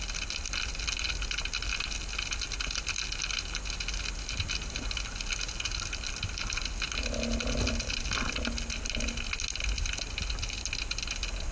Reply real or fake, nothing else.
real